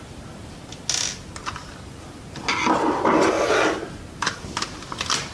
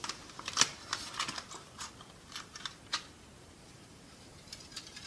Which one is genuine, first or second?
first